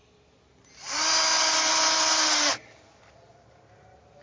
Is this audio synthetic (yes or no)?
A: no